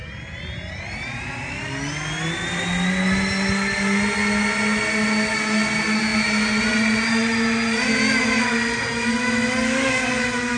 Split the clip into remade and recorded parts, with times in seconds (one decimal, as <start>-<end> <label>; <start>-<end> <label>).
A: 0.0-10.6 recorded